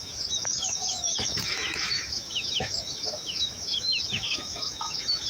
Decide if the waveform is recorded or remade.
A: remade